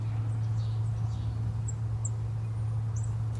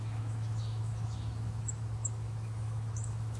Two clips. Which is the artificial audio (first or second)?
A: second